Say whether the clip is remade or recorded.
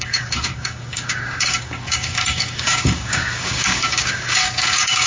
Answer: remade